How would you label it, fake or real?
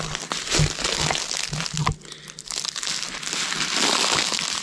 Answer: real